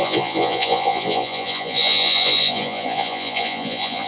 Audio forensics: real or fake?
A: fake